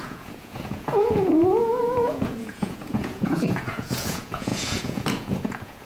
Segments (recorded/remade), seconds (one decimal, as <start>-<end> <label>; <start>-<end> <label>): 0.0-5.9 remade

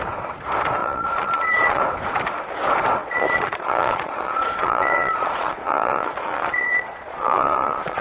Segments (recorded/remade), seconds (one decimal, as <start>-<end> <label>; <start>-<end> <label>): 0.0-0.8 recorded; 0.8-1.8 remade; 1.8-3.0 recorded; 3.0-8.0 remade

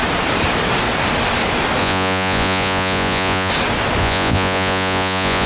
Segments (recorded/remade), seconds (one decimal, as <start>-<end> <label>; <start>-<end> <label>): 0.0-1.8 recorded; 1.8-3.5 remade; 3.5-4.0 recorded; 4.0-5.5 remade